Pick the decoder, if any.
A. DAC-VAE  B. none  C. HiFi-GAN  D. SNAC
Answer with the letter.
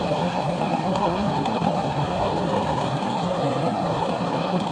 D